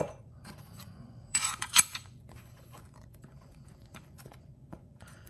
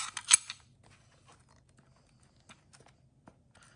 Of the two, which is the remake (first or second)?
first